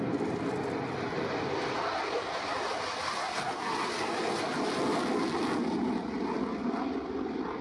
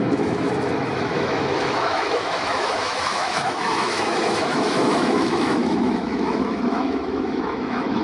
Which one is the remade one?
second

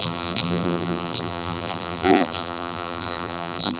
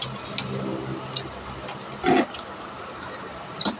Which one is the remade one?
first